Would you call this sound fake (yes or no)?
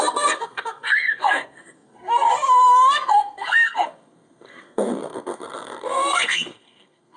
yes